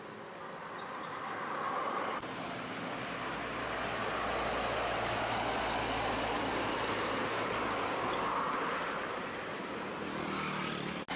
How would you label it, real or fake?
real